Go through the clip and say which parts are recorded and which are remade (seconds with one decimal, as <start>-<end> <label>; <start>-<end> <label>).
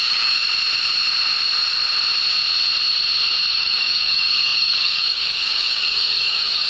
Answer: 0.0-0.4 remade; 0.4-3.5 recorded; 3.5-6.7 remade